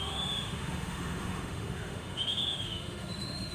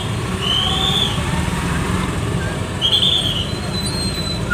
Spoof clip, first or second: first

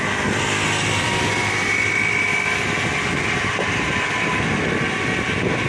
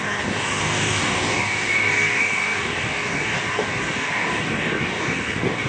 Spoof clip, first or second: second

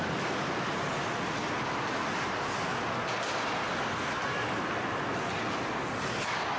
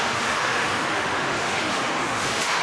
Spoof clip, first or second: second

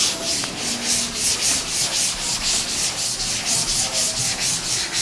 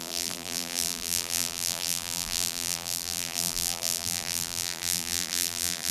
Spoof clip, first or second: second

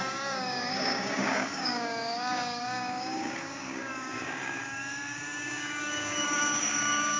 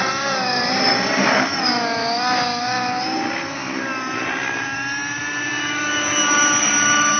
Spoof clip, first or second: first